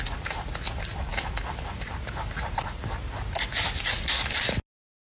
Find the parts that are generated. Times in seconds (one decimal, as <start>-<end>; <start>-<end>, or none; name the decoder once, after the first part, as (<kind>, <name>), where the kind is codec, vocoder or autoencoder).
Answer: none